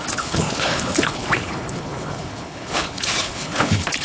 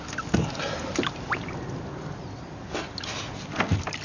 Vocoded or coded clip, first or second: first